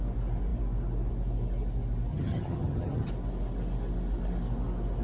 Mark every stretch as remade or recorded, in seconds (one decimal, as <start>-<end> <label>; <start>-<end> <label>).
0.0-2.1 recorded; 2.1-3.1 remade; 3.1-5.0 recorded